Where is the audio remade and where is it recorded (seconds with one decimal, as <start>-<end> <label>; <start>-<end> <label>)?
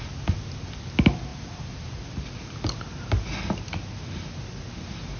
0.0-5.2 recorded